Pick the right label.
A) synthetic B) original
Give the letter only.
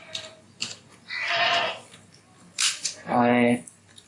A